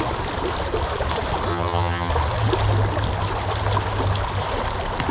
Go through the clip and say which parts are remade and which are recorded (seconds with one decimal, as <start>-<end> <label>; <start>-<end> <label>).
0.0-1.5 recorded; 1.5-2.1 remade; 2.1-5.1 recorded